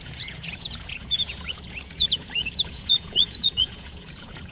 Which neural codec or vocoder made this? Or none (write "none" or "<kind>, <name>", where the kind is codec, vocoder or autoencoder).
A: vocoder, Vocos